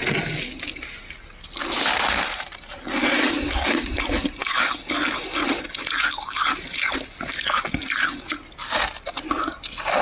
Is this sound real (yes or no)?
yes